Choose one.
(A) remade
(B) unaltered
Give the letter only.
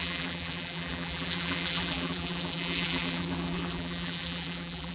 A